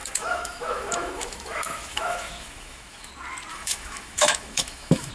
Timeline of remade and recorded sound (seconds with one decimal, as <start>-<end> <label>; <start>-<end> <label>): 0.0-3.1 remade; 3.1-3.5 recorded; 3.5-5.1 remade